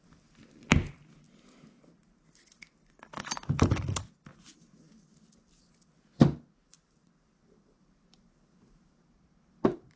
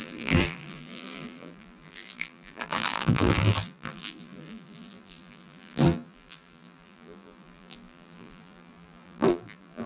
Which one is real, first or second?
first